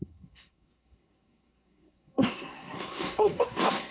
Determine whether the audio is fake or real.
fake